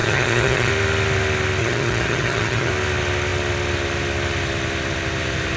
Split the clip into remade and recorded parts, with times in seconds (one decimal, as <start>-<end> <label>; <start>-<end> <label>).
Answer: 0.0-0.7 remade; 0.7-1.6 recorded; 1.6-2.7 remade; 2.7-5.6 recorded